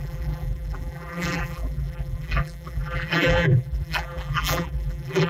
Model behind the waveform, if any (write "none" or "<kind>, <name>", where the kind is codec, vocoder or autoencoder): vocoder, BigVGAN v2